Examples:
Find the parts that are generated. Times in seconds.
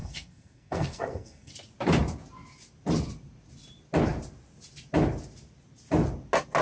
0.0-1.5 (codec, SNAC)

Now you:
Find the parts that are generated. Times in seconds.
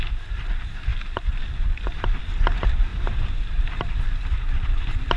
0.9-2.2 (vocoder, BigVGAN v2); 2.9-4.0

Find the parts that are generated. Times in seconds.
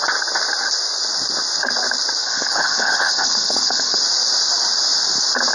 2.2-4.0 (codec, HILCodec)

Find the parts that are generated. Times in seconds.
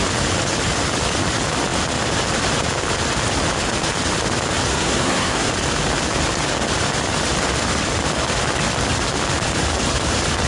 4.7-5.5 (codec, SNAC)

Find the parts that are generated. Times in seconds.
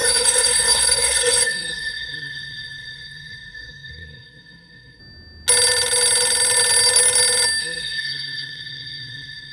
0.0-5.0 (codec, SNAC); 7.6-9.5